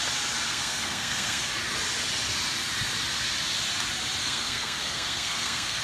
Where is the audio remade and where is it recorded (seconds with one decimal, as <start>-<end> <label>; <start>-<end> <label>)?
0.0-0.5 recorded; 0.5-1.5 remade; 1.5-4.2 recorded; 4.2-5.8 remade